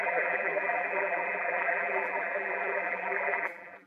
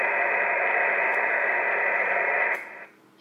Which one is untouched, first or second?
second